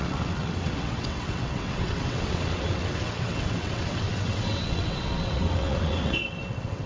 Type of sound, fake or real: fake